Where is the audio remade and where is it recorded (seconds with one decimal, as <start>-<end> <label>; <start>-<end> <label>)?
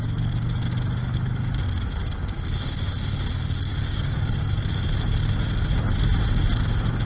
0.0-1.0 recorded; 1.0-1.6 remade; 1.6-3.7 recorded; 3.7-4.5 remade; 4.5-7.0 recorded